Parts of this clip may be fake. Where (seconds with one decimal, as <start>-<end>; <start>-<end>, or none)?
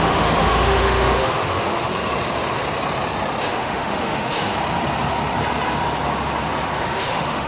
0.0-1.9; 3.4-4.5; 6.8-7.5